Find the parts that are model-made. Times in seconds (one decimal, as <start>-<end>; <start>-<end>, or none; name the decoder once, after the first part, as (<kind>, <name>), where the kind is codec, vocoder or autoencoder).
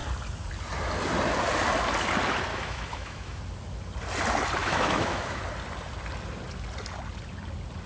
2.5-3.4 (autoencoder, DAC-VAE); 4.6-5.4